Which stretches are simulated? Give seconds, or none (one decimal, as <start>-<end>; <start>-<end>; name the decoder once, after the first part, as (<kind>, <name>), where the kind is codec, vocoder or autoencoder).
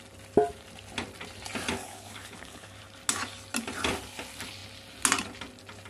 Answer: 1.8-2.8 (codec, DAC)